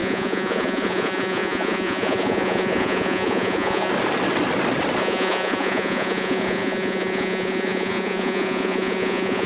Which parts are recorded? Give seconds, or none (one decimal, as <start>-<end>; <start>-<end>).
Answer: 3.9-5.0